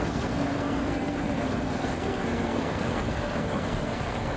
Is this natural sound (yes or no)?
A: no